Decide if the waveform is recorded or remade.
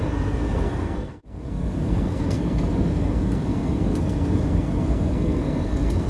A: remade